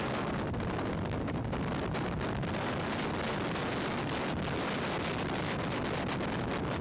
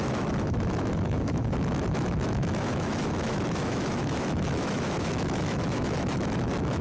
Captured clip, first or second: first